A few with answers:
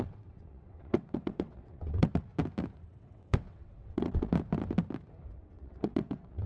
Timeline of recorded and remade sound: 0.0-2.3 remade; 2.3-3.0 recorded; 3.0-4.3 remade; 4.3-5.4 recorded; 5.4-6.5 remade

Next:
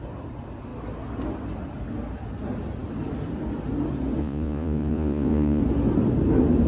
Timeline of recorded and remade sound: 0.0-4.2 recorded; 4.2-5.6 remade; 5.6-6.7 recorded

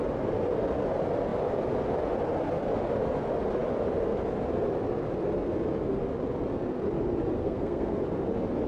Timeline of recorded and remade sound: 0.0-7.4 recorded; 7.4-8.0 remade; 8.0-8.7 recorded

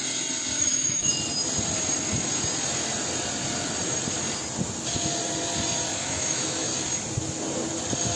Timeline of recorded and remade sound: 0.0-0.6 recorded; 0.6-1.1 remade; 1.1-6.0 recorded; 6.0-6.7 remade; 6.7-8.2 recorded

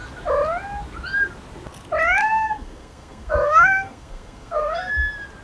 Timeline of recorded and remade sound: 0.0-2.2 recorded; 2.2-4.9 remade; 4.9-5.4 recorded

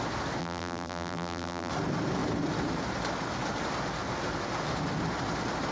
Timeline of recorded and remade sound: 0.0-0.4 recorded; 0.4-1.7 remade; 1.7-5.7 recorded